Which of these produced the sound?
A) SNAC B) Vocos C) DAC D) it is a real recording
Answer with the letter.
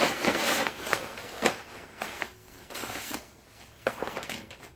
A